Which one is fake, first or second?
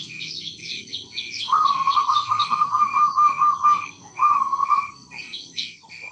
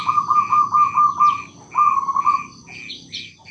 first